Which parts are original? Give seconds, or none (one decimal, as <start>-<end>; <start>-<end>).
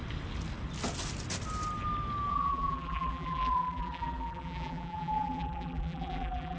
0.0-2.3